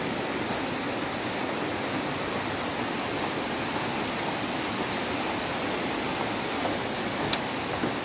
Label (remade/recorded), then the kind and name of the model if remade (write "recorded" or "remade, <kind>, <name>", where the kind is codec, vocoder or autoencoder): recorded